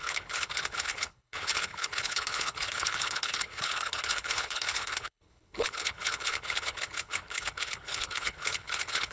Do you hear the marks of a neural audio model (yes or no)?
yes